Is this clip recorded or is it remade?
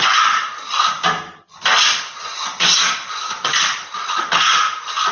recorded